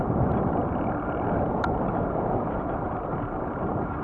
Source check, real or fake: fake